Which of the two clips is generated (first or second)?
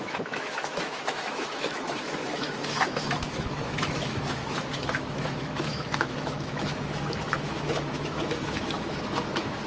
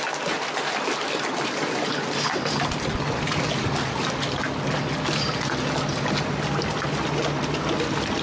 first